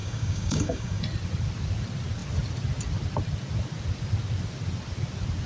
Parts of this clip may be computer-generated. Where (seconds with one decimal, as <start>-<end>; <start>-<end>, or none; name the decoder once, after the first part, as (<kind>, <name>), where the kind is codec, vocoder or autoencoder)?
0.0-1.0 (codec, DAC)

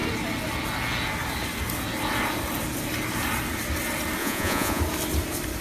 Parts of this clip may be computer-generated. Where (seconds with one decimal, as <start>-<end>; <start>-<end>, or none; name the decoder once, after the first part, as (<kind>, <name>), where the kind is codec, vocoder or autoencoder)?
4.2-4.8 (vocoder, Vocos)

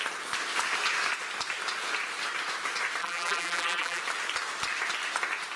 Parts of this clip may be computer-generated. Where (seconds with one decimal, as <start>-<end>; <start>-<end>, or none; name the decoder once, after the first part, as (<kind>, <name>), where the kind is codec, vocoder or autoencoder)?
3.0-4.0 (vocoder, BigVGAN v2)